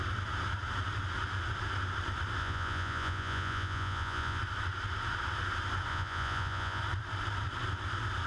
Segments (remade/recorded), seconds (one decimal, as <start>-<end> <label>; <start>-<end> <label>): 0.0-2.4 recorded; 2.4-4.4 remade; 4.4-5.9 recorded; 5.9-6.8 remade; 6.8-8.3 recorded